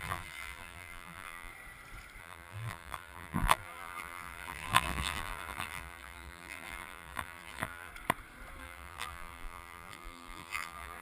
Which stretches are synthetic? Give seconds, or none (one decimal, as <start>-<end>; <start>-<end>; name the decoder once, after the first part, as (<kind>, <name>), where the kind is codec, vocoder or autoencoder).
0.0-1.5 (vocoder, BigVGAN v2); 2.2-7.9; 8.6-11.0